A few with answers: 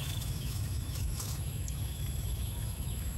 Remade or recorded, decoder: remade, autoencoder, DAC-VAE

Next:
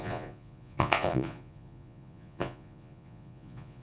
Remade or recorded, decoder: remade, vocoder, Vocos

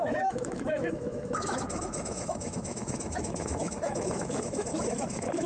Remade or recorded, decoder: remade, autoencoder, DAC-VAE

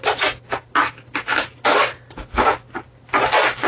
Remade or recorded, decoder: recorded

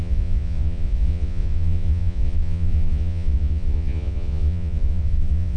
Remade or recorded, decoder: remade, vocoder, Vocos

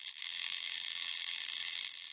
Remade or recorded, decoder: remade, vocoder, BigVGAN v2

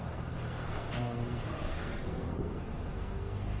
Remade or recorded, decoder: remade, codec, SNAC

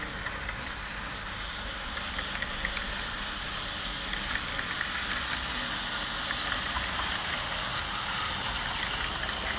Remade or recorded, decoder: recorded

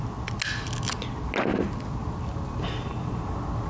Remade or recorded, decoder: recorded